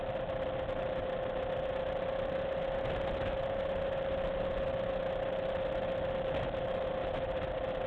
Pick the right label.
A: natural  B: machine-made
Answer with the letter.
A